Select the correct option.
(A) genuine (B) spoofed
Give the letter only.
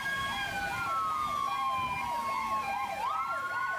A